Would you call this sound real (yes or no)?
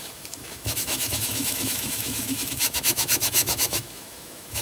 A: no